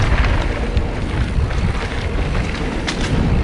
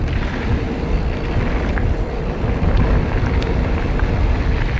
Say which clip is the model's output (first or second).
first